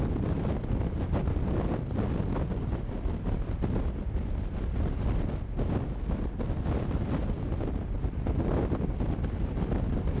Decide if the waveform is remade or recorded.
recorded